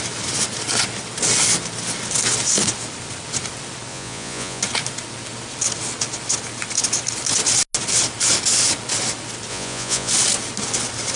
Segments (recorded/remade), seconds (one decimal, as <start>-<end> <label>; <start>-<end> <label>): 0.0-3.9 recorded; 3.9-4.6 remade; 4.6-9.5 recorded; 9.5-10.1 remade; 10.1-11.2 recorded